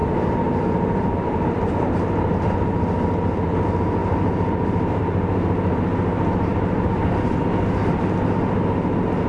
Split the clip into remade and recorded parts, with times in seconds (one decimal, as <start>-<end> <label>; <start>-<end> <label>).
0.0-1.7 remade; 1.7-4.0 recorded; 4.0-5.0 remade; 5.0-6.5 recorded; 6.5-7.9 remade; 7.9-9.3 recorded